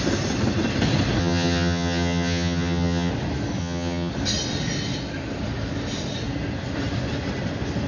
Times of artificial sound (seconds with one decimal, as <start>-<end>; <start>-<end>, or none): 1.2-3.1; 3.6-4.1

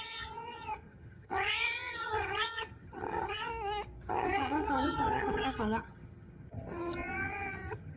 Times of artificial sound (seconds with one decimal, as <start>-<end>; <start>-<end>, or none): 0.0-3.5; 4.1-8.0